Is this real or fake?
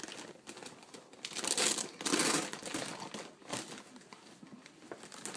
real